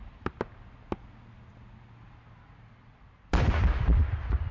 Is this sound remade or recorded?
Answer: recorded